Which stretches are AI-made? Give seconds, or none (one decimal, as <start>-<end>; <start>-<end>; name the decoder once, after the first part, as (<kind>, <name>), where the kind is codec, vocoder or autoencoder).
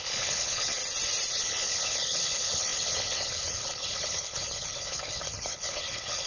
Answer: 0.0-0.8 (codec, HILCodec); 1.3-6.3